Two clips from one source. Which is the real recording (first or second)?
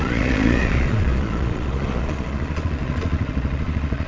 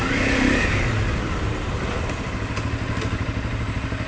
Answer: second